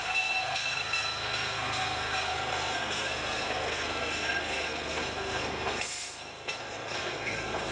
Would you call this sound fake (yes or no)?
yes